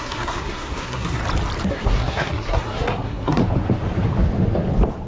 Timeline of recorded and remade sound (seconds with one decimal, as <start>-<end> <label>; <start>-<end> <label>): 0.0-1.2 remade; 1.2-1.7 recorded; 1.7-3.4 remade; 3.4-5.1 recorded